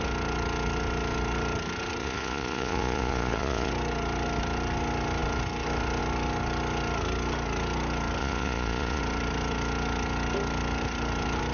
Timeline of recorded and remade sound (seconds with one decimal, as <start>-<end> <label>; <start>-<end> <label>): 0.0-2.0 recorded; 2.0-3.7 remade; 3.7-8.2 recorded; 8.2-9.0 remade; 9.0-11.5 recorded